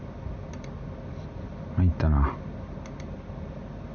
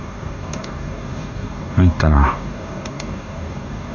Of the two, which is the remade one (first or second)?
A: second